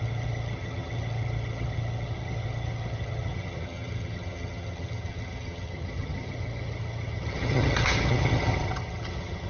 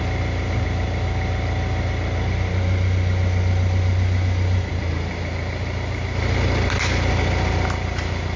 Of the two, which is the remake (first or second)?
first